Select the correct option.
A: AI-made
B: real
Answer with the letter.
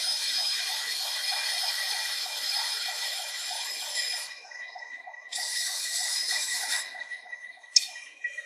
A